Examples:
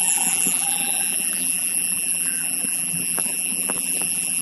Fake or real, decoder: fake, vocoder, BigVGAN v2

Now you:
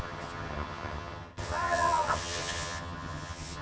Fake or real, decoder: fake, vocoder, HiFi-GAN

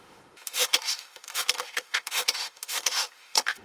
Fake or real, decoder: fake, autoencoder, DAC-VAE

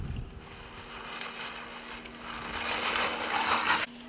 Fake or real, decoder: real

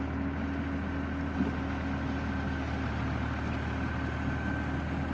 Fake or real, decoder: real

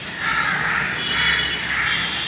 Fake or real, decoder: real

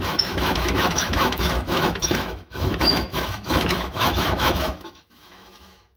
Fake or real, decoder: fake, autoencoder, DAC-VAE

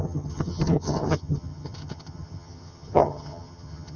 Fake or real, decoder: fake, vocoder, HiFi-GAN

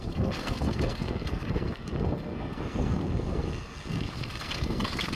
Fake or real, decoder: fake, codec, SNAC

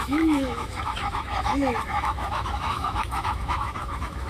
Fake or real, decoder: fake, autoencoder, DAC-VAE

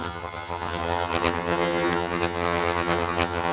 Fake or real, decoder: fake, vocoder, HiFi-GAN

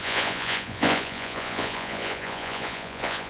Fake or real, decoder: fake, vocoder, Vocos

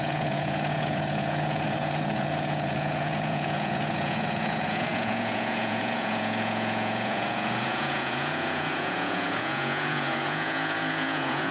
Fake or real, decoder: fake, vocoder, Vocos